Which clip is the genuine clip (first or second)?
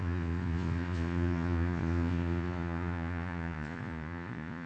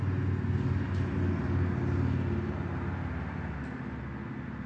second